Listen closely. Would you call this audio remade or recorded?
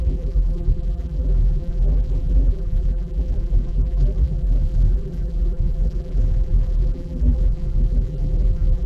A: remade